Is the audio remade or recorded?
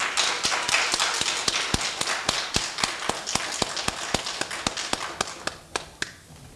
recorded